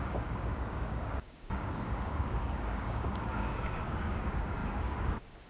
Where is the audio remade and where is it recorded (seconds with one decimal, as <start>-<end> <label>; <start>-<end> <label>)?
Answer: 0.0-5.5 remade

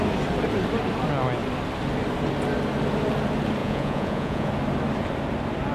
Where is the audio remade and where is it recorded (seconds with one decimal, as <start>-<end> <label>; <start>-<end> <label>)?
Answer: 0.0-3.6 recorded; 3.6-4.5 remade; 4.5-5.7 recorded

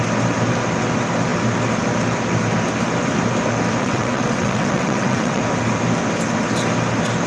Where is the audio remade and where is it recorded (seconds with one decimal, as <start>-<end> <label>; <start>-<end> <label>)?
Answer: 0.0-3.8 recorded; 3.8-5.4 remade; 5.4-7.3 recorded

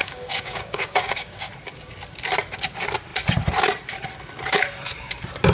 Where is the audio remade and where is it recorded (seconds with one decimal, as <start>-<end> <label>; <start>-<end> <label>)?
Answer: 0.0-1.5 remade; 1.5-5.5 recorded

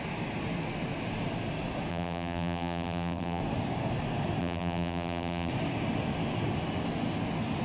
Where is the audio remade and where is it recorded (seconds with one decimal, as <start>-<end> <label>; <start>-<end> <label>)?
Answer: 0.0-1.9 recorded; 1.9-3.4 remade; 3.4-4.4 recorded; 4.4-5.5 remade; 5.5-7.6 recorded

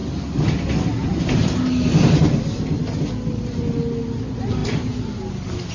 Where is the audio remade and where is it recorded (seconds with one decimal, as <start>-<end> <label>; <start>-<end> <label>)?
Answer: 0.0-5.7 recorded

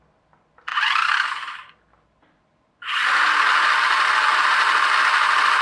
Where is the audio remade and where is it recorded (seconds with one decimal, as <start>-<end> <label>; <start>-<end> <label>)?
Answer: 0.0-0.7 recorded; 0.7-3.8 remade; 3.8-5.6 recorded

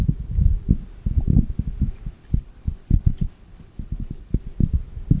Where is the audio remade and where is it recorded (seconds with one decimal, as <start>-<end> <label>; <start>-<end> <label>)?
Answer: 0.0-2.2 recorded; 2.2-4.4 remade; 4.4-5.2 recorded